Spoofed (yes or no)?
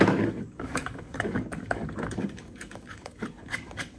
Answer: yes